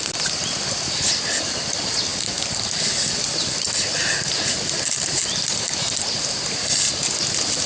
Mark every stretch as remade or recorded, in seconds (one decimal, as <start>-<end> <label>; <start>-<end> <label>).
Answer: 0.0-7.7 recorded